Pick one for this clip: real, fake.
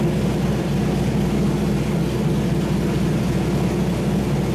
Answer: real